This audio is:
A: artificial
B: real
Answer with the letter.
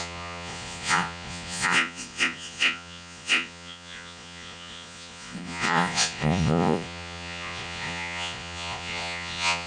A